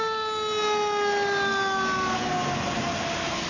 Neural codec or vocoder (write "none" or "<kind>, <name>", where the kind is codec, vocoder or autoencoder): none